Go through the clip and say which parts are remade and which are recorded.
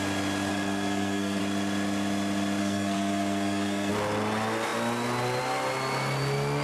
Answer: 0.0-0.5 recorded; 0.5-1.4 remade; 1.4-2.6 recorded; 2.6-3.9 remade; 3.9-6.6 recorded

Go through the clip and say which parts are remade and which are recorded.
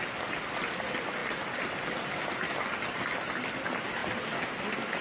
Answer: 0.0-5.0 recorded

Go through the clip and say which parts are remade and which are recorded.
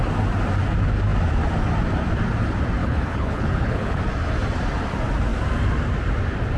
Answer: 0.0-2.8 recorded; 2.8-4.0 remade; 4.0-6.6 recorded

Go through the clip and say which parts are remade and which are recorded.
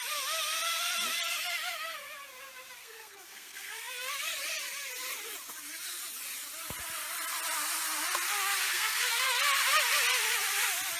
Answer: 0.0-2.8 recorded; 2.8-4.1 remade; 4.1-8.6 recorded; 8.6-9.4 remade; 9.4-11.0 recorded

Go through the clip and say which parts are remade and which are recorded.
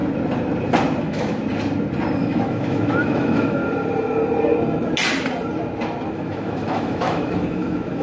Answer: 0.0-1.0 recorded; 1.0-1.4 remade; 1.4-2.2 recorded; 2.2-3.6 remade; 3.6-6.1 recorded; 6.1-8.0 remade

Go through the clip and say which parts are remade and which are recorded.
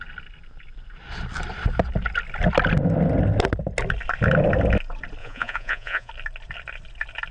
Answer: 0.0-5.2 recorded; 5.2-6.1 remade; 6.1-7.3 recorded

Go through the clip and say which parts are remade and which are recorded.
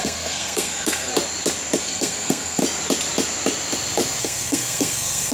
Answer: 0.0-1.1 remade; 1.1-1.8 recorded; 1.8-2.6 remade; 2.6-4.2 recorded; 4.2-5.3 remade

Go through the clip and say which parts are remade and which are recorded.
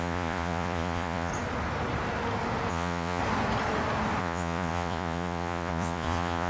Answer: 0.0-1.3 remade; 1.3-2.7 recorded; 2.7-3.2 remade; 3.2-4.2 recorded; 4.2-6.5 remade